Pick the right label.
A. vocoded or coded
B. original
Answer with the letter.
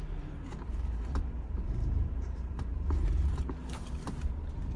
A